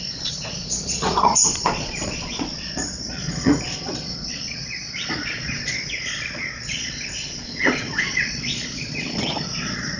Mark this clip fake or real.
fake